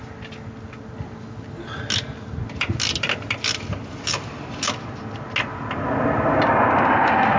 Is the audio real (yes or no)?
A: yes